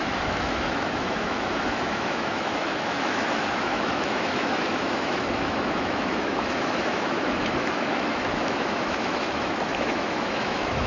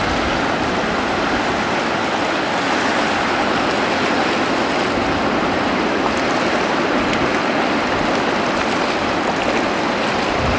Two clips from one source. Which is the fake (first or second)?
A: first